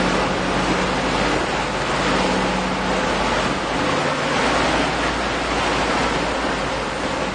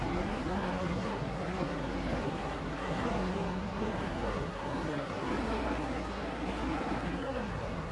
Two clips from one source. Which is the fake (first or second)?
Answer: second